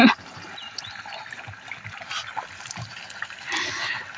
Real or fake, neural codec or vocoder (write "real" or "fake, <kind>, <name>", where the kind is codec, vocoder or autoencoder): real